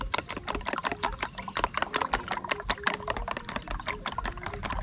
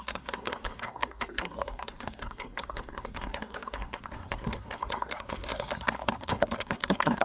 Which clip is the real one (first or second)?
first